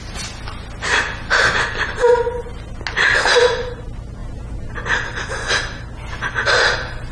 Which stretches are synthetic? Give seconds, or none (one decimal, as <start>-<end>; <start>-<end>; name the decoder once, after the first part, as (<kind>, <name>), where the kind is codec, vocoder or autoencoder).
none